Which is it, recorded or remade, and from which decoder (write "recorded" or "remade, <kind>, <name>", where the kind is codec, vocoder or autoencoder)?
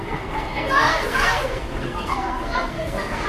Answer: remade, codec, SNAC